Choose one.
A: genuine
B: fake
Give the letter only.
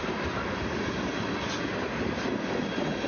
A